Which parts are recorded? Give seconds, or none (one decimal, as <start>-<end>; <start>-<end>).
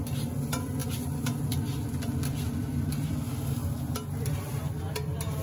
0.0-5.4